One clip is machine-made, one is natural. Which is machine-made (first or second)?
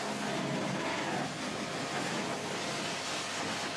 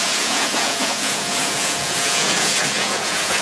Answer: second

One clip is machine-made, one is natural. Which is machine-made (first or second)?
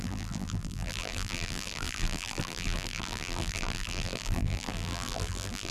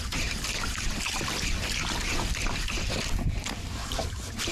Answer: first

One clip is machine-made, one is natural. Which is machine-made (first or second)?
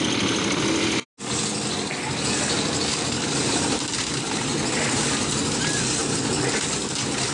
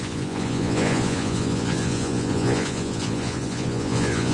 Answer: second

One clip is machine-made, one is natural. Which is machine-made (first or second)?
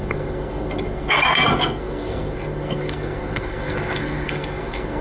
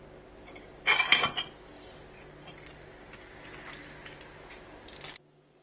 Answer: first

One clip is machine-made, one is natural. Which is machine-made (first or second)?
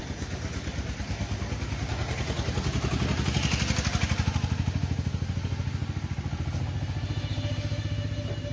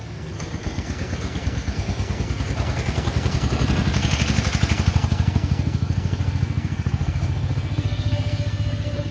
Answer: second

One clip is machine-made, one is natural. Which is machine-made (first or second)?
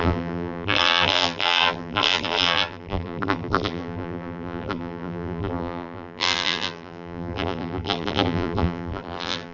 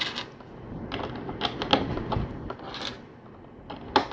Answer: first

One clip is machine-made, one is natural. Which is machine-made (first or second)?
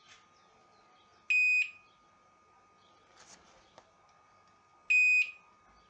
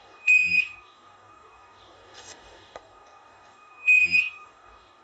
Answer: second